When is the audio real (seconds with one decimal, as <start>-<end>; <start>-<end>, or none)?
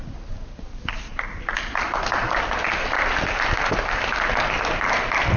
0.0-5.4